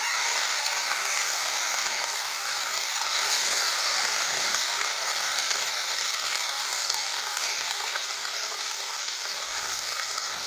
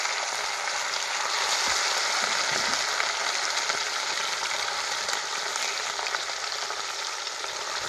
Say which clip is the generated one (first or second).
first